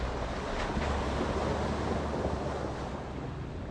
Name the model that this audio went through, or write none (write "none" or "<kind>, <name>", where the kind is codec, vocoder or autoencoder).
none